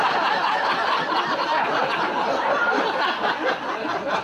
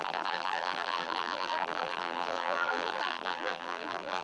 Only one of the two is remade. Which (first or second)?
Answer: second